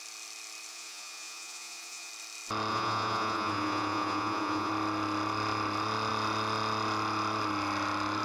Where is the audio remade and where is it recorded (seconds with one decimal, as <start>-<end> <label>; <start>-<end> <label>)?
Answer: 0.0-0.7 recorded; 0.7-2.1 remade; 2.1-2.7 recorded; 2.7-4.7 remade; 4.7-8.2 recorded